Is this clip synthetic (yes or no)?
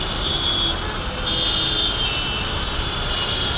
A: no